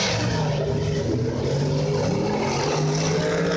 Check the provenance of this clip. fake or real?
real